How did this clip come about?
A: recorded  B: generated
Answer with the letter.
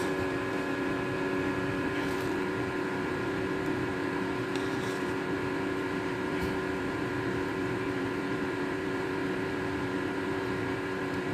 B